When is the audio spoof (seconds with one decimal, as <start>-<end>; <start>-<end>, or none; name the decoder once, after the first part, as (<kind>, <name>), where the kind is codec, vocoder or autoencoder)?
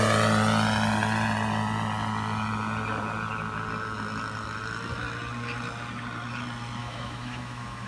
6.8-7.9 (autoencoder, DAC-VAE)